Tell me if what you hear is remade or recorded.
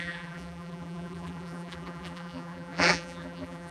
remade